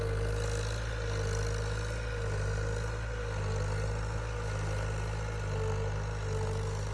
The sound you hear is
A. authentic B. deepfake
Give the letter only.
A